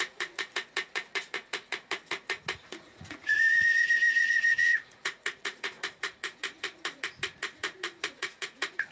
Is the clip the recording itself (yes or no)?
no